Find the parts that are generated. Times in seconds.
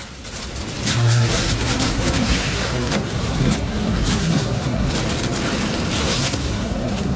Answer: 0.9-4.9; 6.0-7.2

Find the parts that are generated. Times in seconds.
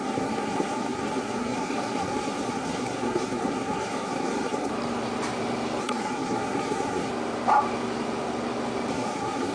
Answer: 0.0-4.7; 5.8-7.1; 8.9-9.5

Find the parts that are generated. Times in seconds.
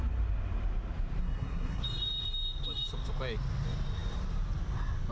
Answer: 1.2-1.8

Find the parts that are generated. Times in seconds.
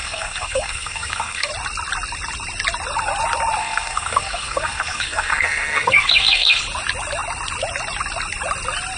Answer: 0.0-1.5; 3.6-6.6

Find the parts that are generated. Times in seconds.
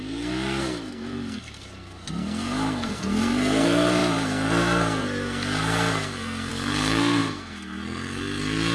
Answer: 0.0-8.7